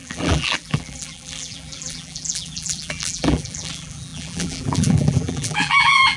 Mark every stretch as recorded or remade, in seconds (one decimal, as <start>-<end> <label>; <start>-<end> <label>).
0.0-6.2 remade